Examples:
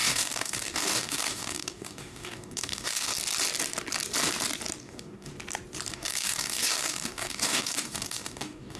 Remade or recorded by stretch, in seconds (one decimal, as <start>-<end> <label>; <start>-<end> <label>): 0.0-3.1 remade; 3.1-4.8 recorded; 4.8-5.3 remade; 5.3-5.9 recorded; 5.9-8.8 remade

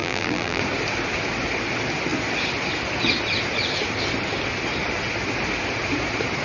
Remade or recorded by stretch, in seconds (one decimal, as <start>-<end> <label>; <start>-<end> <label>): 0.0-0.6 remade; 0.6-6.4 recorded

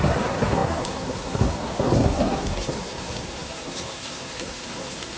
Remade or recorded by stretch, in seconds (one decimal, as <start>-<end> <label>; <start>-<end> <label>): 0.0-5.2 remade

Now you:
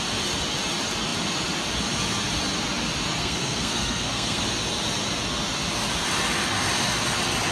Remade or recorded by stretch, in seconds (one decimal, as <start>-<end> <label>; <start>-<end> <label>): 0.0-3.2 recorded; 3.2-4.4 remade; 4.4-7.5 recorded

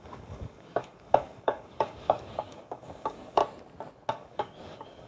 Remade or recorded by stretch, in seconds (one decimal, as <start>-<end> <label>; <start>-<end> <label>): 0.0-3.4 remade; 3.4-4.1 recorded; 4.1-5.1 remade